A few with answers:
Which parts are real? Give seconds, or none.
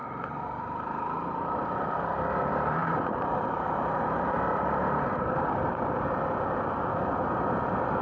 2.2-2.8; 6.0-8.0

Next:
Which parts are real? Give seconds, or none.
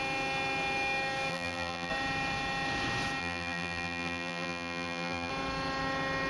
0.0-1.3; 1.9-3.2; 5.3-6.3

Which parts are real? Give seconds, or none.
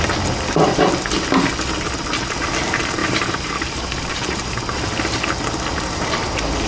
0.0-3.0; 4.8-6.7